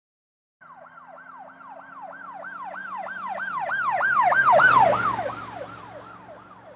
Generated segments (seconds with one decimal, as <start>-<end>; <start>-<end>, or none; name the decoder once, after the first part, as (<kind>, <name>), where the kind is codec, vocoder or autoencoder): none